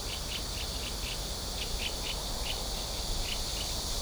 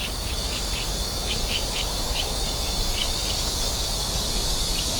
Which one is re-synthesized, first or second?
second